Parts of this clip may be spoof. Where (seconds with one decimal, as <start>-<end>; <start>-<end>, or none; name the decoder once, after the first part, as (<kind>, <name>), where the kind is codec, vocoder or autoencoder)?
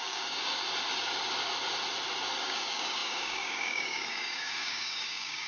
0.0-0.6 (codec, DAC); 2.4-5.5